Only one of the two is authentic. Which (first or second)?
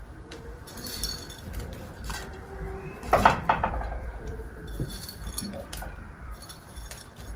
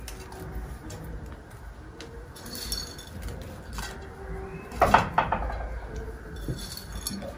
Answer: second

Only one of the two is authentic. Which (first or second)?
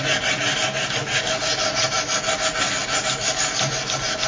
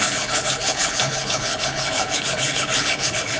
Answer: first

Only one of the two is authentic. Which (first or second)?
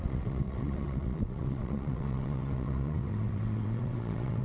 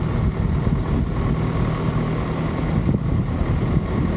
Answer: second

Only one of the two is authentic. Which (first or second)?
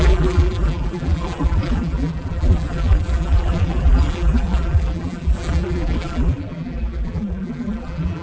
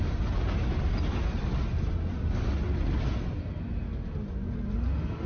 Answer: second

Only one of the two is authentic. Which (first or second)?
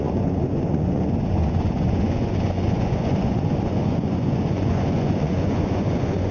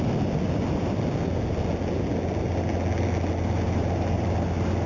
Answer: second